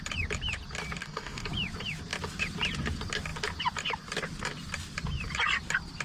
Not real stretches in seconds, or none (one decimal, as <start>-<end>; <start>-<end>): 1.0-1.5